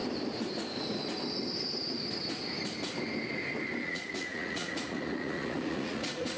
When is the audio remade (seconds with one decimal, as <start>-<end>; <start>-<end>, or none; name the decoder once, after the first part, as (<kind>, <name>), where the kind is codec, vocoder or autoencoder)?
3.8-6.4 (vocoder, Vocos)